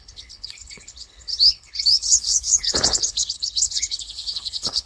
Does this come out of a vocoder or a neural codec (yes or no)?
yes